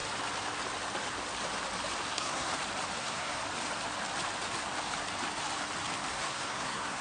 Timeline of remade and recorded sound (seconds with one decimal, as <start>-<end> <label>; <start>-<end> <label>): 0.0-2.1 recorded; 2.1-2.5 remade; 2.5-3.0 recorded; 3.0-3.4 remade; 3.4-6.1 recorded; 6.1-7.0 remade